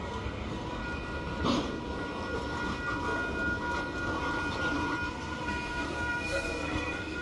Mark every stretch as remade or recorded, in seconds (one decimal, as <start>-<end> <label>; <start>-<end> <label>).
0.0-0.8 remade; 0.8-5.1 recorded; 5.1-7.2 remade